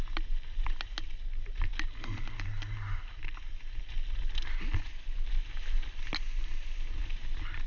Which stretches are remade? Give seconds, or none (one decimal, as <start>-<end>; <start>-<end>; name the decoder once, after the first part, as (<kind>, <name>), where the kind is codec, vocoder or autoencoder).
none